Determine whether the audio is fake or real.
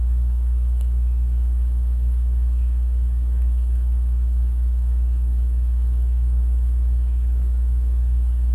fake